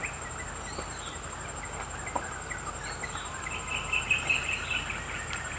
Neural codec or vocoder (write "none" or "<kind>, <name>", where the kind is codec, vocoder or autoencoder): none